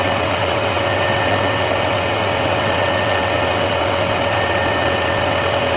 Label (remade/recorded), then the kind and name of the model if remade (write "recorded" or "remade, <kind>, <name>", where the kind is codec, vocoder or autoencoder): remade, vocoder, WaveNeXt